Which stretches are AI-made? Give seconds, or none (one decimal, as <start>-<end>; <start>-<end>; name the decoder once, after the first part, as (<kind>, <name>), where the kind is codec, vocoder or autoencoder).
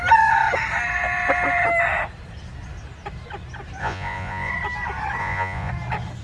3.8-4.5 (vocoder, Vocos); 5.2-5.7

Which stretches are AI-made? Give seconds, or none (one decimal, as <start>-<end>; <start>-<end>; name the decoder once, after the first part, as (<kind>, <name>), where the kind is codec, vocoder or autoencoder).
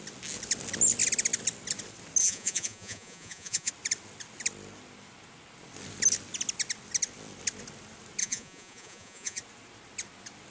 2.2-3.7 (vocoder, Vocos); 8.2-9.4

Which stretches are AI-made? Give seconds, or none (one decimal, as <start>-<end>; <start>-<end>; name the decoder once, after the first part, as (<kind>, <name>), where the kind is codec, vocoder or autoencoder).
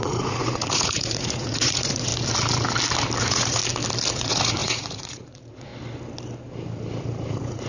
0.0-2.1 (vocoder, Vocos); 3.2-3.6; 4.1-5.7; 7.3-7.7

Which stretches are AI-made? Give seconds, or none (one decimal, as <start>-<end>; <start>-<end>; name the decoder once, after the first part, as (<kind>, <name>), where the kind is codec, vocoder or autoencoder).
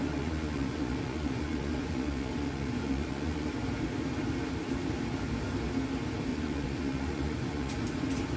0.0-3.5 (vocoder, Vocos); 6.3-7.7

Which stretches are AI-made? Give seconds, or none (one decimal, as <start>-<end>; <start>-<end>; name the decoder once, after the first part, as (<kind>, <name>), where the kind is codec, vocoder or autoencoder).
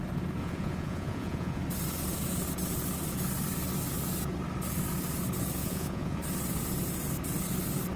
0.4-1.6 (vocoder, Vocos); 5.6-6.2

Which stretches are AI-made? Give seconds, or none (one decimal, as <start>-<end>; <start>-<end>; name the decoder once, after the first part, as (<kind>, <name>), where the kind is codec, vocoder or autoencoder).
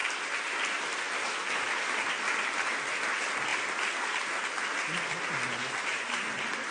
none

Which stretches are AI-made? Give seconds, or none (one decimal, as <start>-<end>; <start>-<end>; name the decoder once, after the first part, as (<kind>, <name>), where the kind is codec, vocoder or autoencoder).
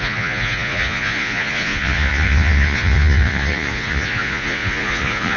0.0-5.4 (vocoder, Vocos)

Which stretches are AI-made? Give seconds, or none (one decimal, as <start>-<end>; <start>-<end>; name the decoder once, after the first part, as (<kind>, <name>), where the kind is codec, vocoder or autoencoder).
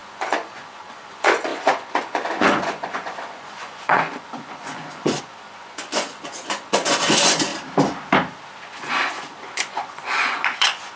0.0-7.5 (vocoder, Vocos); 8.6-11.0